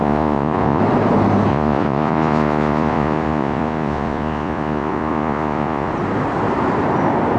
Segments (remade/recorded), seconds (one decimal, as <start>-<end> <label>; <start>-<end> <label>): 0.0-0.8 remade; 0.8-1.5 recorded; 1.5-5.9 remade; 5.9-7.4 recorded